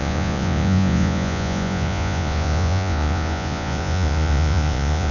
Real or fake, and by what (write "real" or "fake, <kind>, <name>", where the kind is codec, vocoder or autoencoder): fake, vocoder, Vocos